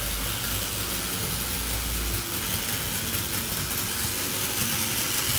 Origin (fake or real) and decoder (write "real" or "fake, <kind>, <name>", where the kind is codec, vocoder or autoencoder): real